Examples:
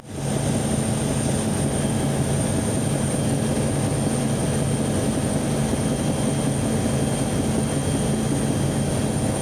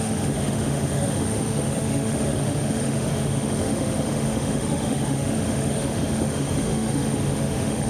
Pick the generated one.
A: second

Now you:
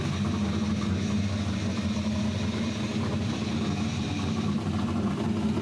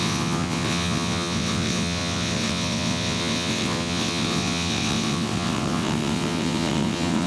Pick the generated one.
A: second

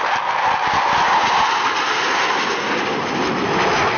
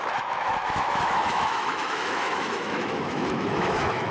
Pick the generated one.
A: second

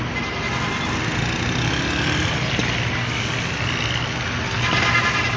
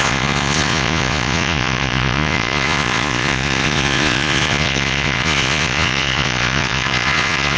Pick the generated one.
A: second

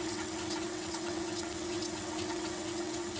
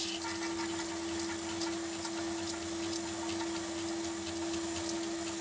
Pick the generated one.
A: first